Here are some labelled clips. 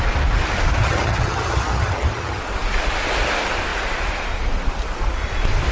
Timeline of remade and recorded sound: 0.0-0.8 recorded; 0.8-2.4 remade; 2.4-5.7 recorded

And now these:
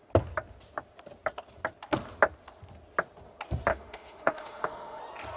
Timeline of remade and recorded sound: 0.0-3.7 recorded; 3.7-5.0 remade; 5.0-5.4 recorded